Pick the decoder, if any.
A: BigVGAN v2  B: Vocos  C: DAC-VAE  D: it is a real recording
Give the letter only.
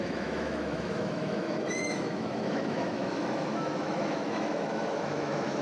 C